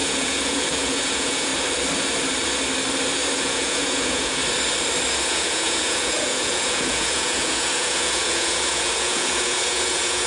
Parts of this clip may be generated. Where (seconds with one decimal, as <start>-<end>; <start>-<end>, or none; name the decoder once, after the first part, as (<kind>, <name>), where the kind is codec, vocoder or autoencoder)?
0.0-1.5 (vocoder, Vocos); 3.4-4.4; 5.2-10.3